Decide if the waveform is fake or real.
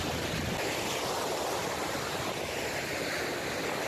real